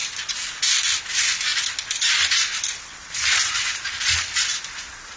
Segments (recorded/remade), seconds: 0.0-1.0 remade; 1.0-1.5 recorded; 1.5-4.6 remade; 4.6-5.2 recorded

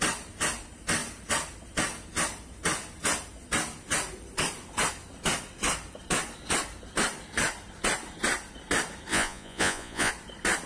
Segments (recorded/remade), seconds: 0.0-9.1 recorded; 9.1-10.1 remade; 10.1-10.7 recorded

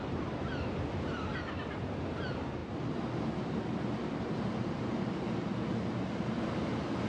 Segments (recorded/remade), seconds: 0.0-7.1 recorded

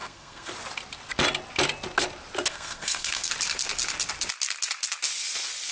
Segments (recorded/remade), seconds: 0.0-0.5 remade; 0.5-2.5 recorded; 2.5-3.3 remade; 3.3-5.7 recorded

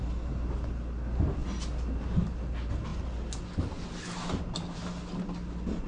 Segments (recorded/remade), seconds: 0.0-5.9 recorded